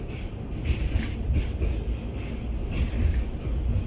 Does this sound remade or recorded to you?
recorded